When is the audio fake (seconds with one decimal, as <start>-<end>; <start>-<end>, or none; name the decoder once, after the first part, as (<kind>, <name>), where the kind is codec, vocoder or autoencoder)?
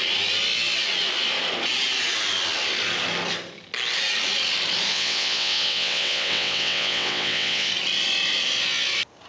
4.9-7.7 (vocoder, WaveNeXt)